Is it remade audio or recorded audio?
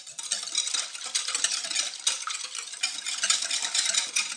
recorded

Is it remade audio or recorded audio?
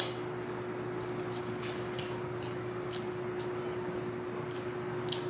recorded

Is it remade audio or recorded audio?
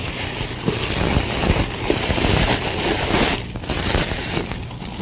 recorded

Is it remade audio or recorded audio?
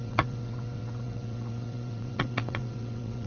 remade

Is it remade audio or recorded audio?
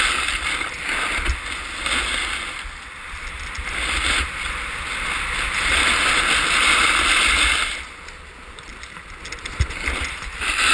recorded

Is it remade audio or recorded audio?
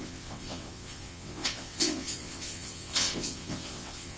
remade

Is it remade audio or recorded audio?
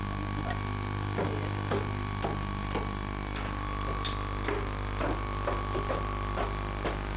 recorded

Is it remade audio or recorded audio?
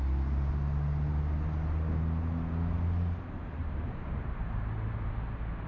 recorded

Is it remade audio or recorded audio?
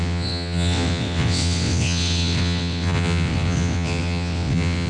remade